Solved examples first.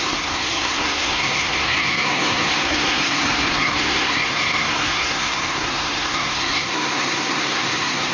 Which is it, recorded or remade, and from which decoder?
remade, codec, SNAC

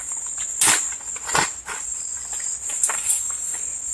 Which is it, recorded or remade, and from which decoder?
recorded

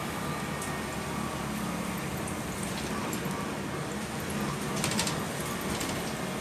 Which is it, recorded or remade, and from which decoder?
recorded